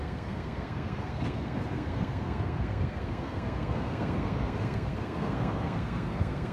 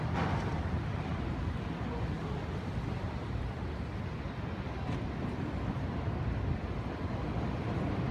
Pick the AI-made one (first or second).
first